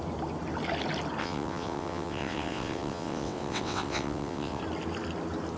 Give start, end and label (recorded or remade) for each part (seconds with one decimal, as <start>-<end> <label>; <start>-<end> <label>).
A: 0.0-1.2 recorded; 1.2-4.6 remade; 4.6-5.6 recorded